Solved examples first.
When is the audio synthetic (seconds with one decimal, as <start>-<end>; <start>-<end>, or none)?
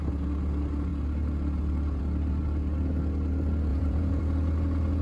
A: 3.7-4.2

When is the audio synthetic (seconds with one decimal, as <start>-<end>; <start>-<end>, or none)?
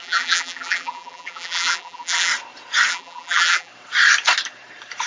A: 0.0-2.3; 2.9-3.7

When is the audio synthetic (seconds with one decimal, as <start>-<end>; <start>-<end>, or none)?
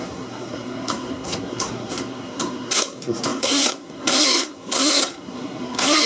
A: 0.0-6.1